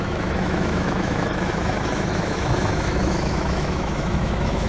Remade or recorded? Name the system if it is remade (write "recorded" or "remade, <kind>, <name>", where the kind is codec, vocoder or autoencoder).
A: remade, autoencoder, DAC-VAE